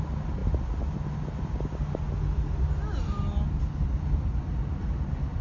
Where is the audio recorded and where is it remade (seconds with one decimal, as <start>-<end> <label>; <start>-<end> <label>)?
0.0-5.4 recorded

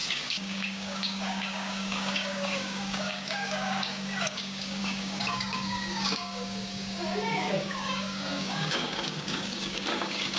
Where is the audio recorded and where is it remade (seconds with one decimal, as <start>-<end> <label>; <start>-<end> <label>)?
0.0-10.4 remade

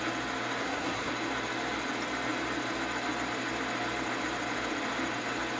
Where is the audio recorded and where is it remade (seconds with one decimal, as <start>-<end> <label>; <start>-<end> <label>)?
0.0-0.6 recorded; 0.6-1.1 remade; 1.1-5.6 recorded

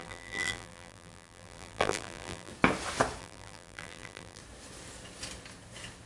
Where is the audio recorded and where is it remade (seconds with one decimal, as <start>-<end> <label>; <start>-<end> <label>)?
0.0-2.5 remade; 2.5-3.2 recorded; 3.2-4.4 remade; 4.4-6.1 recorded

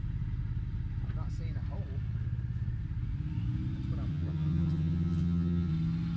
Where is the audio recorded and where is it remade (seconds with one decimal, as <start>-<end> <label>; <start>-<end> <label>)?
0.0-4.1 recorded; 4.1-5.7 remade; 5.7-6.2 recorded